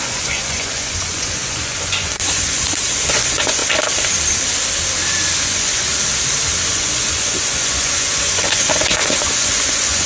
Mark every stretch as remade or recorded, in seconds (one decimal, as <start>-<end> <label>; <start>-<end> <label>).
0.0-3.6 remade; 3.6-5.4 recorded; 5.4-5.9 remade; 5.9-6.7 recorded; 6.7-10.1 remade